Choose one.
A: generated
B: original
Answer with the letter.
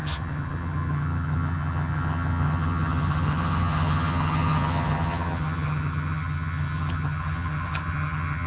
A